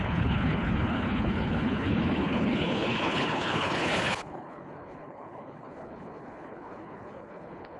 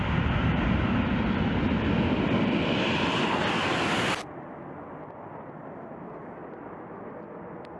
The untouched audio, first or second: second